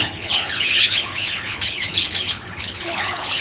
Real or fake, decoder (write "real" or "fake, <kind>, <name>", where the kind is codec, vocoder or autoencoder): fake, codec, HILCodec